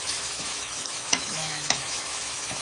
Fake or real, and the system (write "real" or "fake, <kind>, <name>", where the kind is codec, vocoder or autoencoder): fake, autoencoder, DAC-VAE